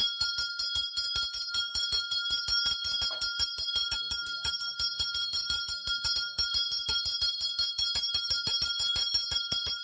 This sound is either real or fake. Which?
fake